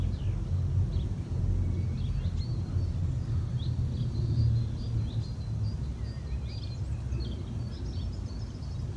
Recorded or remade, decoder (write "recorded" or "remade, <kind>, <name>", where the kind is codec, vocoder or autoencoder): recorded